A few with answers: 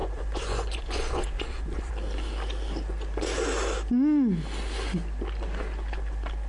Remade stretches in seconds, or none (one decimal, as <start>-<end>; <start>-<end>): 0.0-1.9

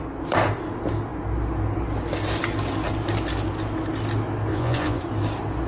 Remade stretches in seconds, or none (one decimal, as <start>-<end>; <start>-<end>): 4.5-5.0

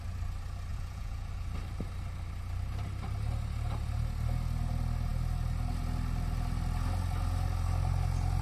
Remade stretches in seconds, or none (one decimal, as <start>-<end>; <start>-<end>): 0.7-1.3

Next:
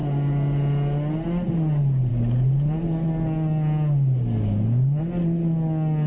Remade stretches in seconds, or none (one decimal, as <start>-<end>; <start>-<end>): none

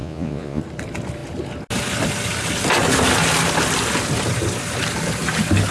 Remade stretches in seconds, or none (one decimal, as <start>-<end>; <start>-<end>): 0.0-0.6